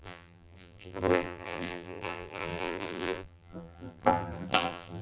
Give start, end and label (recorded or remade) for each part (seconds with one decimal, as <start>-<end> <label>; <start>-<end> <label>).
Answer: 0.0-5.0 remade